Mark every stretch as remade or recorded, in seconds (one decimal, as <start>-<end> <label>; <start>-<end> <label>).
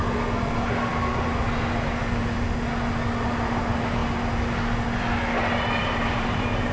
0.0-5.8 recorded; 5.8-6.7 remade